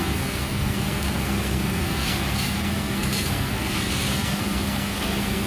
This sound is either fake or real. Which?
fake